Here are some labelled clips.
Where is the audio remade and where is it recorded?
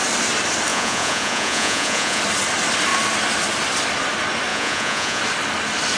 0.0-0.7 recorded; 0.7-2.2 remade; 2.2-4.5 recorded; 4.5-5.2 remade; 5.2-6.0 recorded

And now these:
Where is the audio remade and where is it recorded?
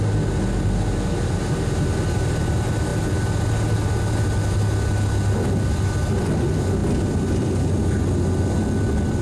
0.0-9.2 recorded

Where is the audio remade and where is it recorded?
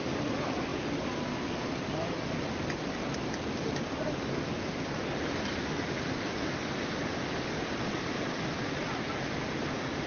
0.0-10.1 recorded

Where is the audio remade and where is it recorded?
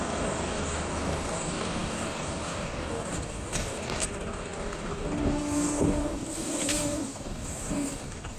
0.0-8.4 remade